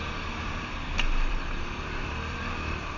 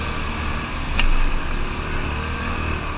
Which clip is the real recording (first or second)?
second